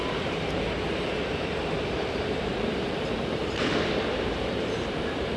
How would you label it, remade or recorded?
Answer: remade